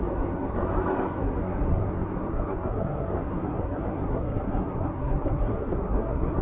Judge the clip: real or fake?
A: fake